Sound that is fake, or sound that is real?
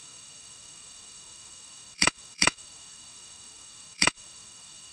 fake